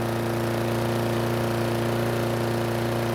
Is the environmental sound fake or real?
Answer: real